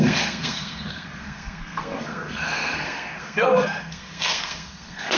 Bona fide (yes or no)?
no